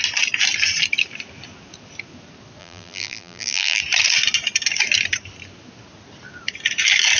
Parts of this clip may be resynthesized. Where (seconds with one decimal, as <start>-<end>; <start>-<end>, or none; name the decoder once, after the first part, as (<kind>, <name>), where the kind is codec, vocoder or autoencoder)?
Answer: 2.6-3.8 (vocoder, BigVGAN v2)